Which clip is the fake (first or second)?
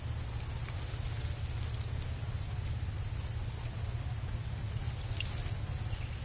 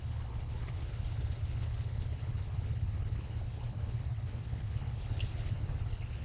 second